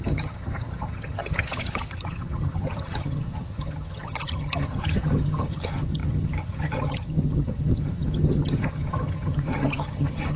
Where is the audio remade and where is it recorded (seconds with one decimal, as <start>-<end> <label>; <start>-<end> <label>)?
0.0-10.4 remade